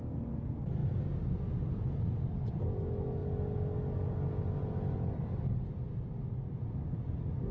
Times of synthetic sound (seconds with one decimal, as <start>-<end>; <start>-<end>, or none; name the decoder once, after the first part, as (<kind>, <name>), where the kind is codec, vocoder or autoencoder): none